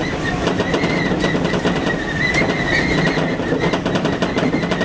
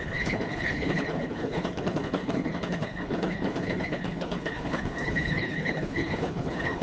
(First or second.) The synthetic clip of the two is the second